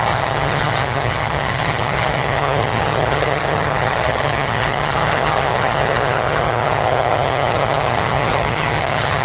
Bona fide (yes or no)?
no